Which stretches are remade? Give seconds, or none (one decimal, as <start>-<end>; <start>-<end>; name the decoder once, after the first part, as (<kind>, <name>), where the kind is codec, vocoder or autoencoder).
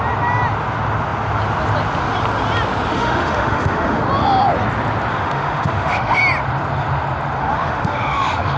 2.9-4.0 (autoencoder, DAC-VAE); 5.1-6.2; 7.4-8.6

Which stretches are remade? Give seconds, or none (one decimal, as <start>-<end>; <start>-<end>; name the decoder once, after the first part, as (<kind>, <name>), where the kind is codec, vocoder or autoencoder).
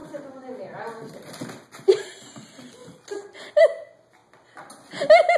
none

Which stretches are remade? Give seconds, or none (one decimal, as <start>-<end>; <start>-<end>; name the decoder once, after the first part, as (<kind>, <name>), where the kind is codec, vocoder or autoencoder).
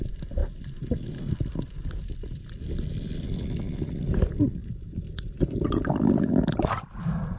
none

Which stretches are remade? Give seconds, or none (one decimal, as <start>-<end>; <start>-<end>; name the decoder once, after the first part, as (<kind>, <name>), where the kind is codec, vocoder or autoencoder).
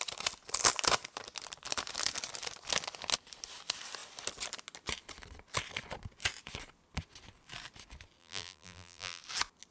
8.2-9.2 (vocoder, BigVGAN v2)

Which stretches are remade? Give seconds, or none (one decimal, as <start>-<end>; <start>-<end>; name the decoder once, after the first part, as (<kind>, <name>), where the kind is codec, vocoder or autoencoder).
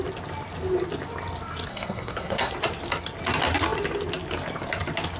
1.7-2.5 (codec, SNAC)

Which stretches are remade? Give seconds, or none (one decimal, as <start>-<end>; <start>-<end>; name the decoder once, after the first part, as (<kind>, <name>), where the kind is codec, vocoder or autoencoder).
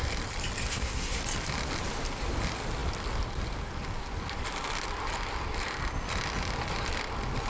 0.7-1.2 (codec, SNAC)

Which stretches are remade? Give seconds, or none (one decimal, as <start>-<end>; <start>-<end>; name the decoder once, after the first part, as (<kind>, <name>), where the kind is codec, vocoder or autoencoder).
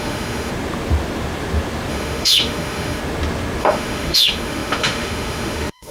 0.0-0.5 (autoencoder, DAC-VAE); 1.9-3.0; 3.6-5.9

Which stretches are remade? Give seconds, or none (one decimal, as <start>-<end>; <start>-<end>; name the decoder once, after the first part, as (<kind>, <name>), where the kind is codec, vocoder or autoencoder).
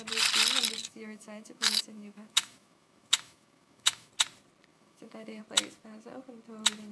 0.8-4.1 (autoencoder, DAC-VAE); 4.7-5.4